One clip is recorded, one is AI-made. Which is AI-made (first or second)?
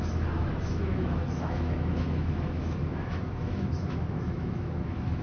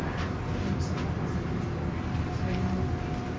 first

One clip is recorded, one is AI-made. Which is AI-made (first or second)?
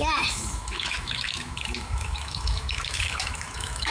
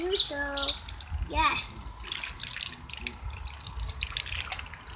first